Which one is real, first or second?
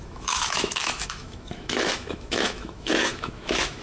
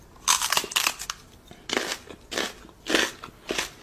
second